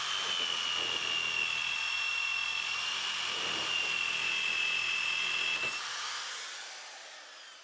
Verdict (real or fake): real